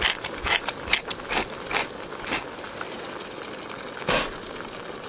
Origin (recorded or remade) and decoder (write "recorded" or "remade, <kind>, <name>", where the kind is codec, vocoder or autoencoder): recorded